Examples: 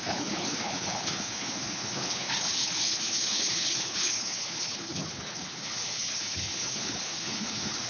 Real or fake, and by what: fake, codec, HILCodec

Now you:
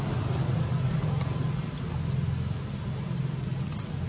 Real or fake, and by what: real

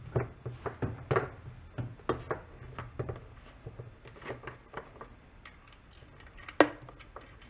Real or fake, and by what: real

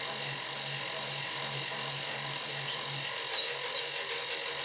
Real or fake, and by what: real